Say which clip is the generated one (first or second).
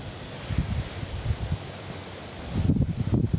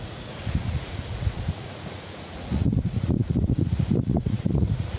second